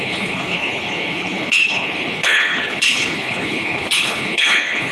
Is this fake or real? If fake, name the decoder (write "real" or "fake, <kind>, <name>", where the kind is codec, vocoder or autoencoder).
fake, codec, HILCodec